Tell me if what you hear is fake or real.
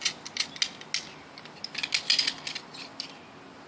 real